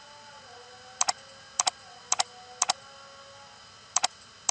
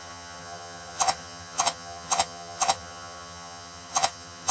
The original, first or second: first